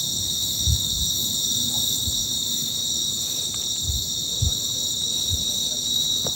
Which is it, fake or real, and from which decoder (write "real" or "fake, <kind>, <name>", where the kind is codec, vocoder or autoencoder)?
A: fake, vocoder, BigVGAN v2